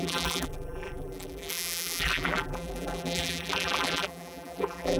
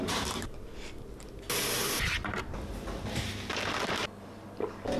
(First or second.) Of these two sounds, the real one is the second